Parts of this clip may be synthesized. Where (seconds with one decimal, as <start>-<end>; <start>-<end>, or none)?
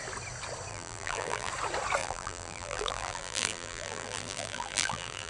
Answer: 0.7-1.5; 2.0-5.3